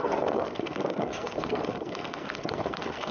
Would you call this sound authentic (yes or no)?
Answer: no